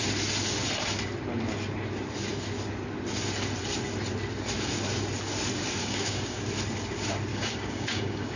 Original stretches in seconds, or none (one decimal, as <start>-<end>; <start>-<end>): 0.0-5.8; 6.4-7.3